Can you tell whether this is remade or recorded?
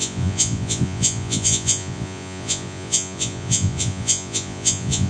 remade